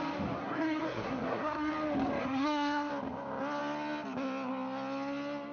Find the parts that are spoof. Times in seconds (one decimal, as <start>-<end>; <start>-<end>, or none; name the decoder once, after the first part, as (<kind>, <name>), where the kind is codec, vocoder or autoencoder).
0.4-1.7 (codec, SNAC); 2.2-2.9